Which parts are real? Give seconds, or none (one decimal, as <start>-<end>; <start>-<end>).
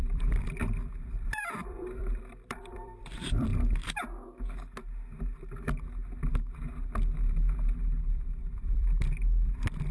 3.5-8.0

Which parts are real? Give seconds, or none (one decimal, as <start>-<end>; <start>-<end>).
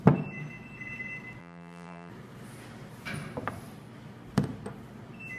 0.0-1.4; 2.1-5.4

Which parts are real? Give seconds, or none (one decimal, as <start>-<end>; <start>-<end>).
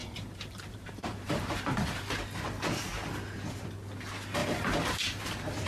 2.0-4.4; 5.2-5.7